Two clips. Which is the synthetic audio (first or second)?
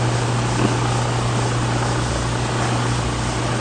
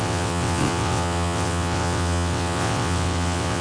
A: second